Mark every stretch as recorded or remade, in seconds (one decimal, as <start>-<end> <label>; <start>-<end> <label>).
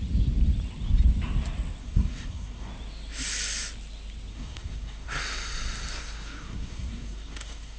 0.0-1.8 recorded; 1.8-2.7 remade; 2.7-4.3 recorded; 4.3-5.2 remade; 5.2-5.9 recorded; 5.9-7.8 remade